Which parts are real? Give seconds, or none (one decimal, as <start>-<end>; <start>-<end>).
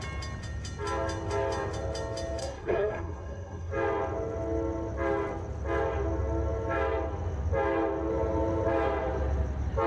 0.0-2.4; 3.7-9.9